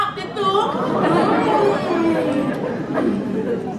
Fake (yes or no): no